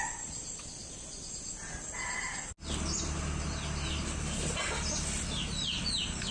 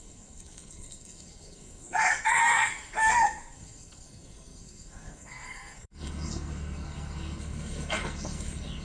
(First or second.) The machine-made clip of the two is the second